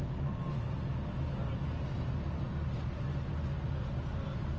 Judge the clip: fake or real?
real